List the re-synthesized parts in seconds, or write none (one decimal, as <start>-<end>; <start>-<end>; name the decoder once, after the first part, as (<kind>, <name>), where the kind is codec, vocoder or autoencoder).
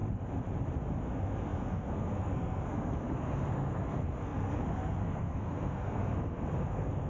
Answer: 1.0-7.1 (codec, SNAC)